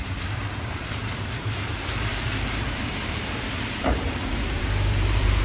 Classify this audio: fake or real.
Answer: fake